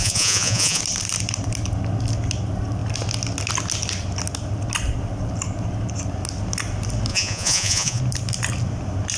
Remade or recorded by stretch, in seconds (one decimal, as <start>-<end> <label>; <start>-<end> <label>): 0.0-0.8 remade; 0.8-7.1 recorded; 7.1-8.0 remade; 8.0-9.2 recorded